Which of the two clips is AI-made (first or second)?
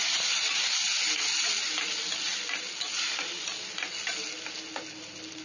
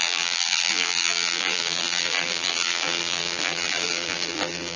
second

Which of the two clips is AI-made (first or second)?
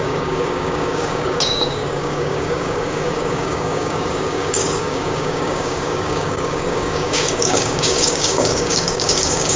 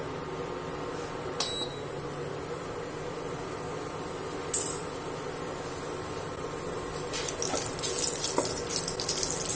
first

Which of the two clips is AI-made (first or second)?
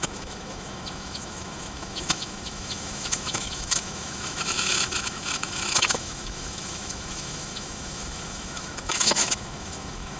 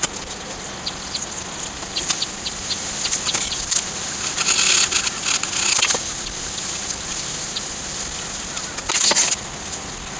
first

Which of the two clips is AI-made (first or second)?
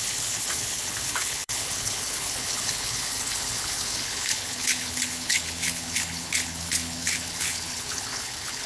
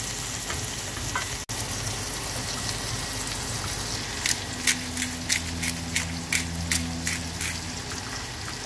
first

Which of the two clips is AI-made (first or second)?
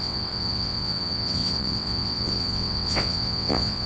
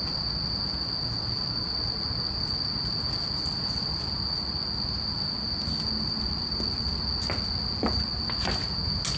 first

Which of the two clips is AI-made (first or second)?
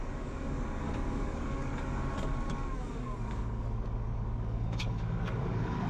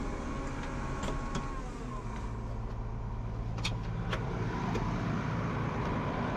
first